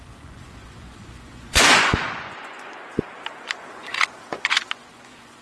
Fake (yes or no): yes